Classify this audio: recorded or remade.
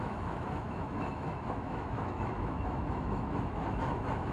remade